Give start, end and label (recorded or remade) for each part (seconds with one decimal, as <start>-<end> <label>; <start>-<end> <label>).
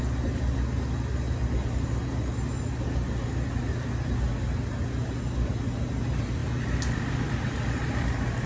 0.0-8.5 recorded